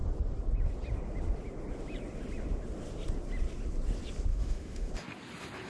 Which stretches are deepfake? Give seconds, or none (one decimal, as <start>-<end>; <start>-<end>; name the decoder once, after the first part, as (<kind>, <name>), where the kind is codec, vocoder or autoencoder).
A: 4.3-4.9 (autoencoder, DAC-VAE)